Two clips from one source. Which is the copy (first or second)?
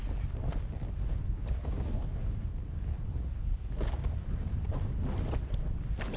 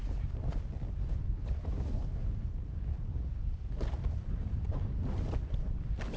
second